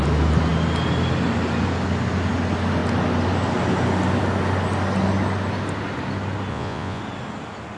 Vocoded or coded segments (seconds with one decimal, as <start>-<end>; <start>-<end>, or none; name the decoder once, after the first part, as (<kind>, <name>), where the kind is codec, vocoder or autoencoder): 6.5-7.0 (vocoder, Vocos)